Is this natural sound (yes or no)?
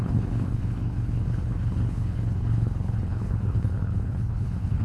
no